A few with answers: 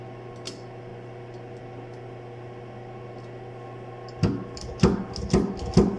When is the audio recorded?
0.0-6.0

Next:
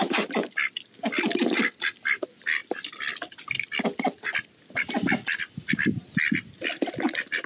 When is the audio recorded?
0.0-7.5

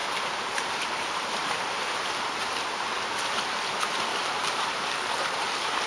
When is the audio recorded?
2.4-4.1; 5.5-5.9

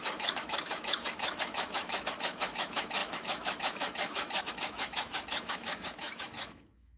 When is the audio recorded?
none